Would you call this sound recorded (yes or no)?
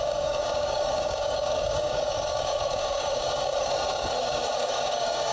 no